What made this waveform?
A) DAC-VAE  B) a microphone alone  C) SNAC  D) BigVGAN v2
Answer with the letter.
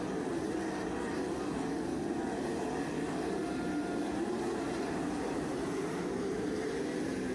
D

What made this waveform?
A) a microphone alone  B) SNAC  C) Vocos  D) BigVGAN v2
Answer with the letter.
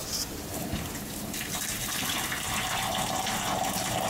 D